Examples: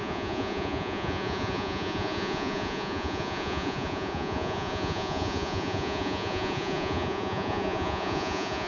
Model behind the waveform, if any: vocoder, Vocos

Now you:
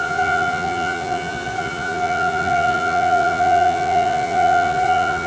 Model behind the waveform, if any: vocoder, Vocos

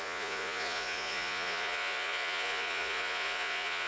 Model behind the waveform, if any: vocoder, Vocos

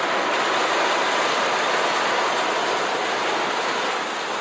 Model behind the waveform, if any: none